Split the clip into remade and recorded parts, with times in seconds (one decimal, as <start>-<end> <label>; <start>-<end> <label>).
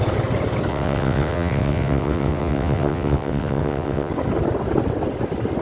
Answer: 0.0-0.7 recorded; 0.7-4.1 remade; 4.1-5.6 recorded